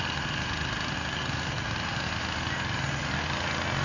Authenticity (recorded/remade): recorded